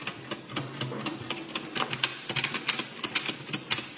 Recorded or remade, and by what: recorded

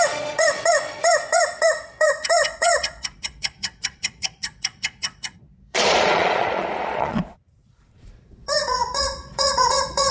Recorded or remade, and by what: remade, vocoder, Vocos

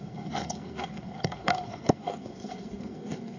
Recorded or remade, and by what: remade, codec, SNAC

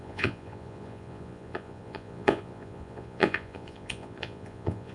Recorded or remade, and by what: remade, vocoder, Vocos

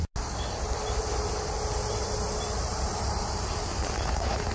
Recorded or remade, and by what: recorded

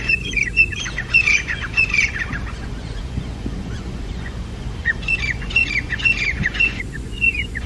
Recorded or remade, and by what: remade, vocoder, Vocos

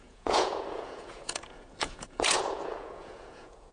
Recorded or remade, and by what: remade, vocoder, Vocos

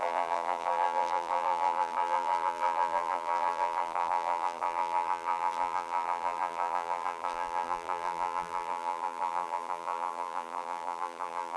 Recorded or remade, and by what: remade, vocoder, BigVGAN v2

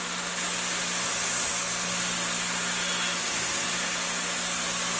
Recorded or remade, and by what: recorded